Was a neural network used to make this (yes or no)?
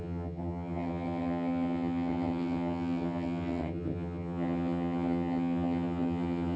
yes